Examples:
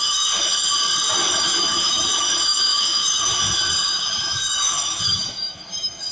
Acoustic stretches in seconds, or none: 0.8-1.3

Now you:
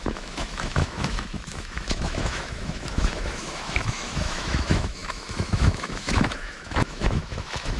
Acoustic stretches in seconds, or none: none